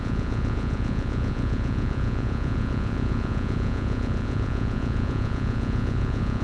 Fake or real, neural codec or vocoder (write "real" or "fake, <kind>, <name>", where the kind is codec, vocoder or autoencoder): fake, vocoder, Vocos